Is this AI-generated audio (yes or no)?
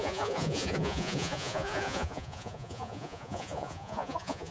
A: yes